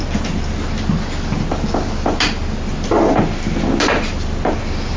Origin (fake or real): real